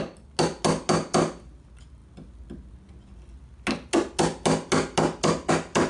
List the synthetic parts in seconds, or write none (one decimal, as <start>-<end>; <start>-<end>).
none